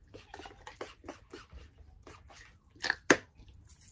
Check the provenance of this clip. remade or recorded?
recorded